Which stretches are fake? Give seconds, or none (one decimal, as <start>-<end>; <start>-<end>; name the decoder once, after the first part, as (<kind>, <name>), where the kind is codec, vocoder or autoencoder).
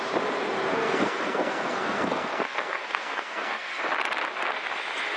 0.7-3.8 (codec, SNAC)